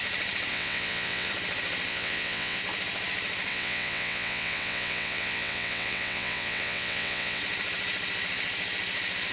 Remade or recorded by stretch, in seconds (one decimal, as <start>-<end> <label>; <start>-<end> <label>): 0.0-0.5 recorded; 0.5-1.3 remade; 1.3-1.9 recorded; 1.9-2.6 remade; 2.6-3.5 recorded; 3.5-7.4 remade; 7.4-9.3 recorded

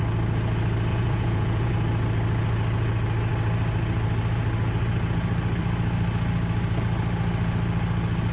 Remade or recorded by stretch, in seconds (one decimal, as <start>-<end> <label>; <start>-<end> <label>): 0.0-0.9 recorded; 0.9-1.7 remade; 1.7-8.3 recorded